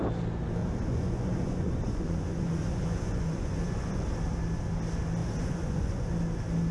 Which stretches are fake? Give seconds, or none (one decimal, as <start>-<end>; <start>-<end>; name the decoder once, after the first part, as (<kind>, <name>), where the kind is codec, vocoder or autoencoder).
0.6-4.0 (vocoder, Vocos); 5.2-6.1